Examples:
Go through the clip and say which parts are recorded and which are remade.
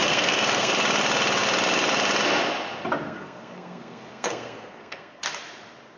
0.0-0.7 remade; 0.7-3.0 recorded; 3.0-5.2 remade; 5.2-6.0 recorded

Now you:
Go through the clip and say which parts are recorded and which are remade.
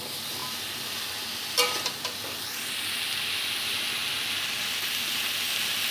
0.0-5.9 recorded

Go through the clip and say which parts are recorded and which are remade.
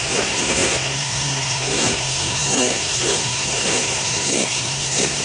0.0-5.2 remade